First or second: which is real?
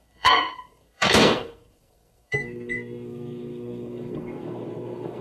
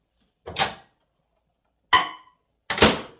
second